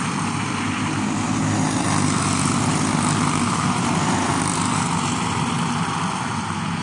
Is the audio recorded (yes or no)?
yes